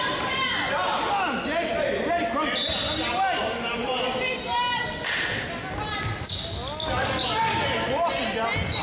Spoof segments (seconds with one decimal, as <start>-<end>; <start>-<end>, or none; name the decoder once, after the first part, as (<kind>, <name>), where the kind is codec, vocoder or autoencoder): none